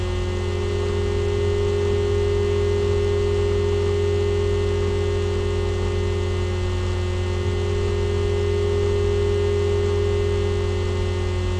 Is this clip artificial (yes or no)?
no